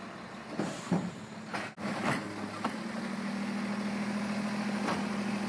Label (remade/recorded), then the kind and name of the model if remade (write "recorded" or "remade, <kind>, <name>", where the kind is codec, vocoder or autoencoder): recorded